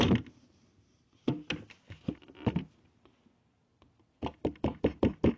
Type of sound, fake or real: real